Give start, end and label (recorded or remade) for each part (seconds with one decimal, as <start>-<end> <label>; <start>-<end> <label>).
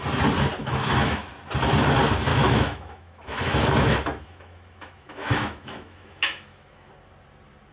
0.0-0.6 recorded; 0.6-1.2 remade; 1.2-2.3 recorded; 2.3-6.9 remade; 6.9-7.7 recorded